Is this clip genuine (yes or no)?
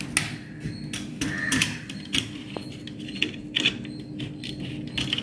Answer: yes